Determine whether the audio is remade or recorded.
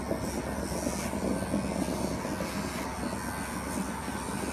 recorded